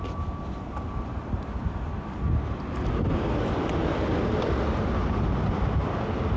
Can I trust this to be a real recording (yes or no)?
yes